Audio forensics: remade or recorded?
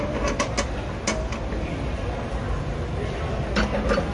recorded